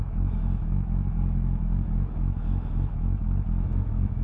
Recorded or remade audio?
remade